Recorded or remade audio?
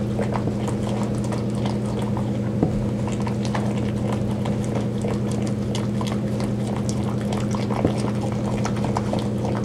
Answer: recorded